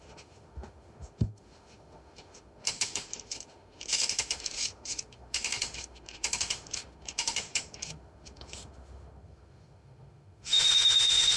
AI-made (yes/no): yes